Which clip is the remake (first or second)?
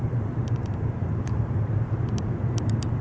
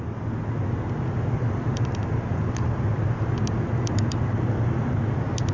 first